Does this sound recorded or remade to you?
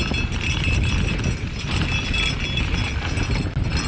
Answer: recorded